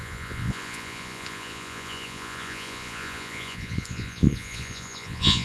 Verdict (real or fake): fake